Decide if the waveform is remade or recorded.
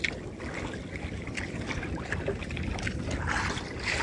recorded